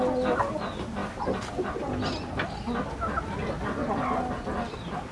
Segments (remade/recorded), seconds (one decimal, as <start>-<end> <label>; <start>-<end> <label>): 0.0-5.1 recorded